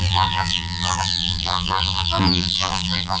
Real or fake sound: fake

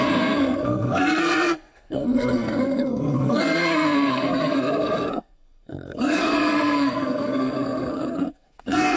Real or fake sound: fake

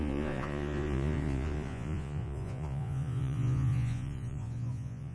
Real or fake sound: fake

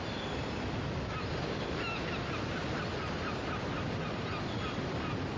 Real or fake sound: real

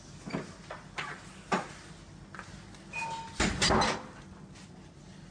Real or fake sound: real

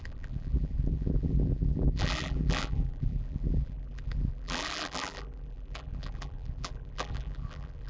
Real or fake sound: fake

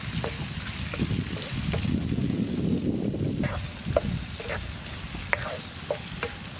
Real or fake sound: real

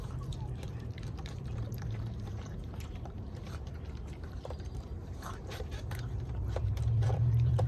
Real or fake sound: fake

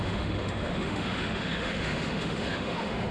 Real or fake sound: fake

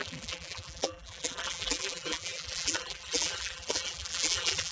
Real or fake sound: fake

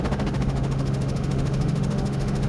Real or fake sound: fake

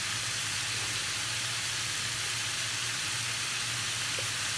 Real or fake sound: real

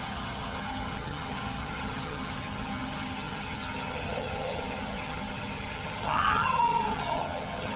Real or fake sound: fake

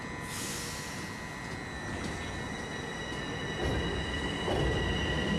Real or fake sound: real